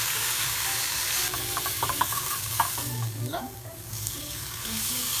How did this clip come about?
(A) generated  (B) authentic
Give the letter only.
A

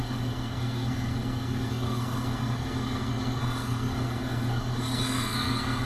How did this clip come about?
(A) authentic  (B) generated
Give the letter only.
B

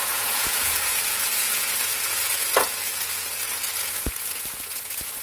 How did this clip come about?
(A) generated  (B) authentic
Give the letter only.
A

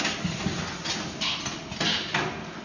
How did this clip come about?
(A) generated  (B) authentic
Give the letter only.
B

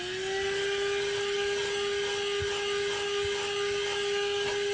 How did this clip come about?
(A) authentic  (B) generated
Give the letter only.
A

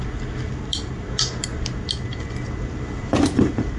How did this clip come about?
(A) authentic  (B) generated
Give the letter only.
A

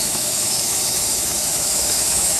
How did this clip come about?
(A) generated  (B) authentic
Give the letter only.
A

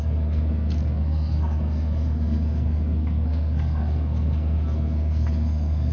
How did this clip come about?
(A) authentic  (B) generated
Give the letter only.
B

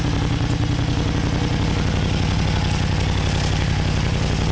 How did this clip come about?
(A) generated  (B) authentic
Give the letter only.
B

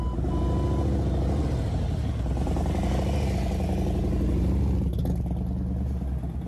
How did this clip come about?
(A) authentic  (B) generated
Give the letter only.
A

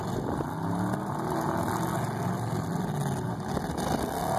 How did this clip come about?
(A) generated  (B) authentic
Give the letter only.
B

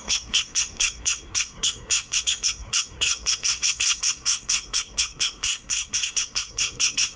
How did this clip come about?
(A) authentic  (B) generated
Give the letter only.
B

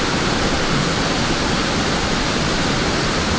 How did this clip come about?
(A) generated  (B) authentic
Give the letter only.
B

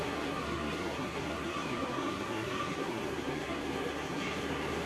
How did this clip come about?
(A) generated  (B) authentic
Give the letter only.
A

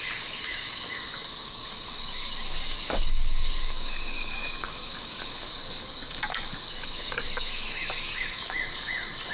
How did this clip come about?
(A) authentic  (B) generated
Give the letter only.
B